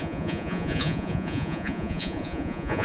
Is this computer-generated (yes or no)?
yes